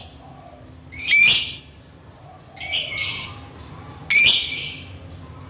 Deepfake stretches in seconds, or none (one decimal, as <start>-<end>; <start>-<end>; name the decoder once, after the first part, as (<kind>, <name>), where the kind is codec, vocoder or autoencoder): none